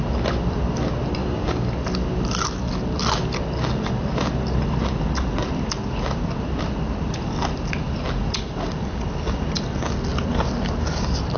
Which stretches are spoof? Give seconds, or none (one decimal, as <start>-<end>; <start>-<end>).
1.2-1.7